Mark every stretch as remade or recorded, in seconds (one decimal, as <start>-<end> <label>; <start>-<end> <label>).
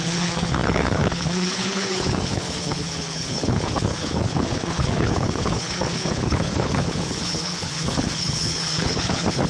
0.0-9.5 remade